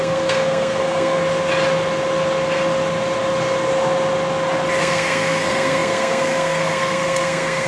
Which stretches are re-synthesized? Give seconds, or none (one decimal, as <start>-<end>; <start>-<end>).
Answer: 0.0-1.2; 4.8-7.7